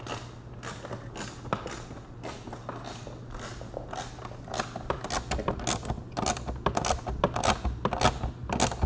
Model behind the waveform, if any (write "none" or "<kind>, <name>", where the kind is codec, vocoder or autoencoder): none